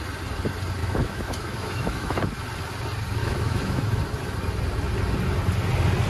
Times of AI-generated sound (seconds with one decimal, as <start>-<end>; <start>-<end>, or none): 0.8-2.2; 3.2-4.0